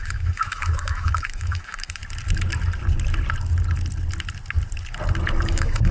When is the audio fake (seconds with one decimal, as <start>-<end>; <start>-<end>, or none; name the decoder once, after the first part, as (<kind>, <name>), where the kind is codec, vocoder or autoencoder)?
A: 0.0-2.0 (autoencoder, DAC-VAE); 5.5-5.9